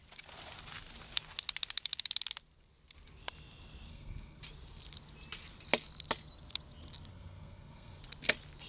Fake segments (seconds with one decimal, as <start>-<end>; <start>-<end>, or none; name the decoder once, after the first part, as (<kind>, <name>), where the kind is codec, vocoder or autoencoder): 3.9-4.4 (codec, SNAC); 7.1-8.0